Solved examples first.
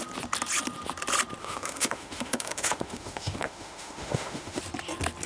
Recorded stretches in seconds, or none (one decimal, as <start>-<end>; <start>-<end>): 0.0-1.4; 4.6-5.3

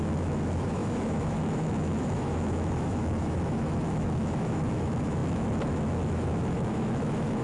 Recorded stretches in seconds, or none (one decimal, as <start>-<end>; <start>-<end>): none

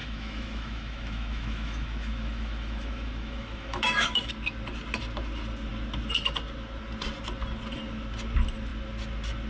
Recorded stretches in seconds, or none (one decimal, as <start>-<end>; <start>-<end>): 4.3-9.5

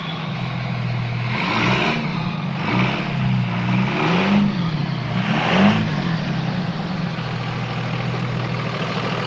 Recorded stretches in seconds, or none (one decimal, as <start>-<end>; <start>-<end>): 1.5-9.3